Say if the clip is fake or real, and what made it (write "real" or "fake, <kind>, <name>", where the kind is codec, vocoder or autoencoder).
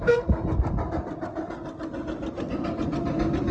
real